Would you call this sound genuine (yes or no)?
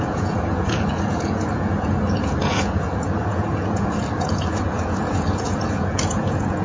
no